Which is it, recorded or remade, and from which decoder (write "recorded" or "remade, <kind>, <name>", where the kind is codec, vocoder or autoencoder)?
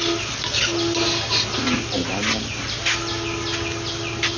recorded